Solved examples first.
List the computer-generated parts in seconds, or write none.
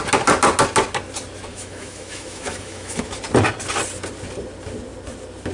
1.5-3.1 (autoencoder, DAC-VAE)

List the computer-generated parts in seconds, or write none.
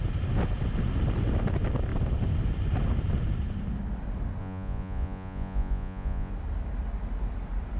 4.4-6.3 (vocoder, Vocos)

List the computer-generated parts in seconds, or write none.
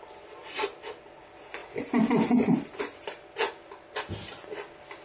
none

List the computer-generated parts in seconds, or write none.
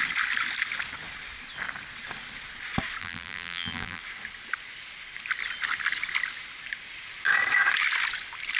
3.0-4.0 (vocoder, BigVGAN v2)